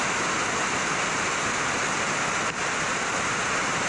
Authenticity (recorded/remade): recorded